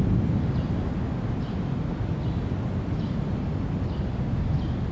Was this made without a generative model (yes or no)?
yes